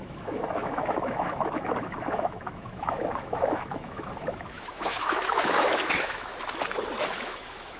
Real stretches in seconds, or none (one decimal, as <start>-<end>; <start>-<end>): 6.3-7.0

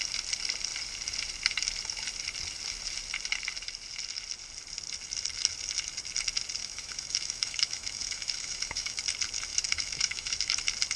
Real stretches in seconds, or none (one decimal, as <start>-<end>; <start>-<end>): 0.0-6.6; 9.0-9.5; 10.6-11.0

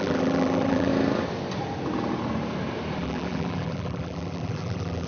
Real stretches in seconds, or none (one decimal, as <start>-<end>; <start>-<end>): 0.9-3.0

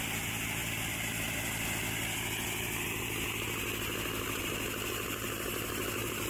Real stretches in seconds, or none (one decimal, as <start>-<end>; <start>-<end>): 0.0-6.3

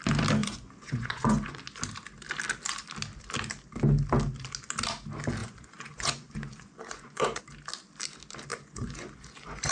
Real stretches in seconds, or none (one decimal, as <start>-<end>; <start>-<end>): 0.0-0.4; 1.6-5.4; 7.4-8.5

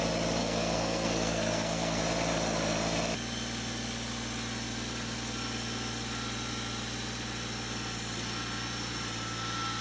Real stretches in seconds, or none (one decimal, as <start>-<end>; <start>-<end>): 0.0-0.4; 2.0-9.8

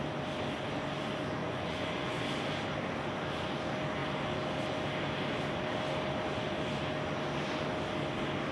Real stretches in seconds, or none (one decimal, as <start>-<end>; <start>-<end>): 0.0-1.4; 2.2-8.5

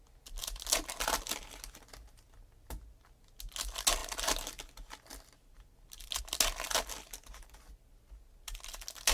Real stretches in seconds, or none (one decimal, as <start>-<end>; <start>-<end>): 0.0-9.1